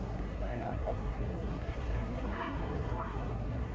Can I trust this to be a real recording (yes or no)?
no